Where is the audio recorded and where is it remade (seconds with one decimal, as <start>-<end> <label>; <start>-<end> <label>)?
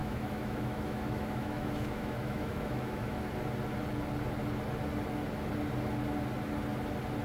0.0-3.3 remade; 3.3-7.2 recorded